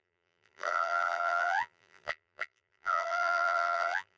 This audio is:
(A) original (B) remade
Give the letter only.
B